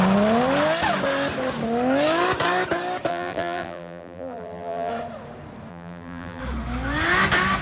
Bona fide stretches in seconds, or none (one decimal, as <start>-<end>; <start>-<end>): 0.0-3.1; 4.9-5.7; 6.4-7.6